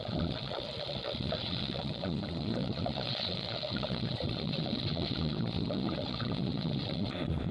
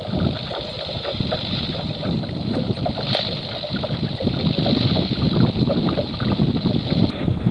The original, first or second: second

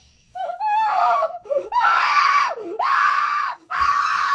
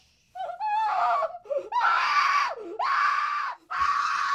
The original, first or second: second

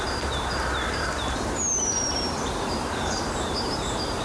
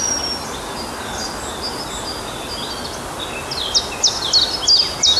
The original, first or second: second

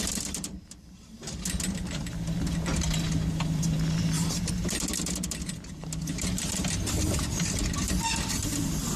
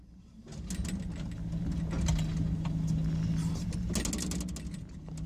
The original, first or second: second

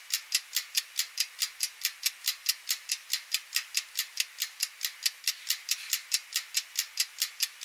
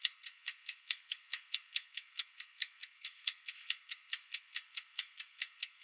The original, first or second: first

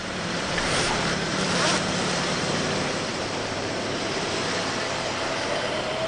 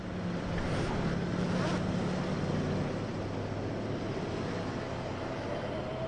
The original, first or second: second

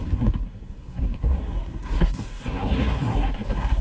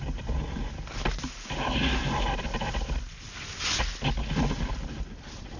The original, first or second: second